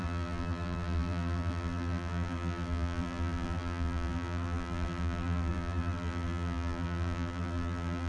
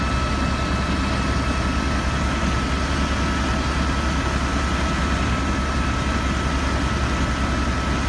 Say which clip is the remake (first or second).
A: first